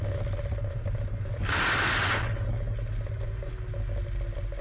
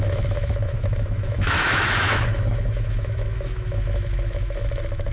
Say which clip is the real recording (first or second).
first